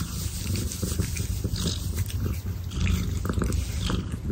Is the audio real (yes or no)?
yes